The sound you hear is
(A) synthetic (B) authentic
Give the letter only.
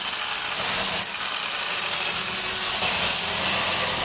B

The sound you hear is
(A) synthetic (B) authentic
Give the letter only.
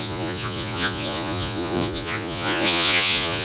A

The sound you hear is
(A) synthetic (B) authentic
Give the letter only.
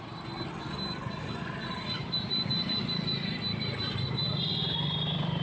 B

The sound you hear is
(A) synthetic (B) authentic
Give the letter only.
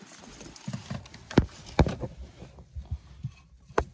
B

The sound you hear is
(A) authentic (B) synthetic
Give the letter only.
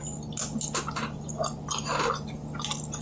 A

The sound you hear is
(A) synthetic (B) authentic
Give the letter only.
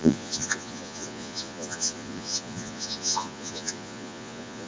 A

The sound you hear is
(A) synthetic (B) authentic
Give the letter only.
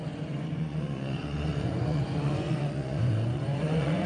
A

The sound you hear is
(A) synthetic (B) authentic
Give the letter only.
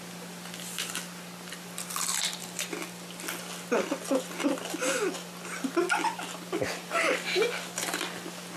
B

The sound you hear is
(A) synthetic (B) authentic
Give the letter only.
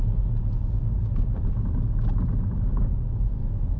B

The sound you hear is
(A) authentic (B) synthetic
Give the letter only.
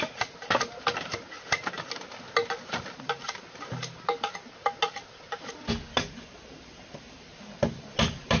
A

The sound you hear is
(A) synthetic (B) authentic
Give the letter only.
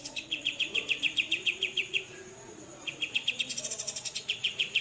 A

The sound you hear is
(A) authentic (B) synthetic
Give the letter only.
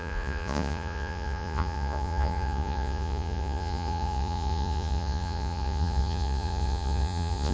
B